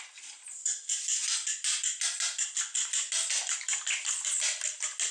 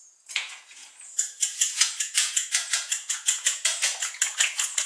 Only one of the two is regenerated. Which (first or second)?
second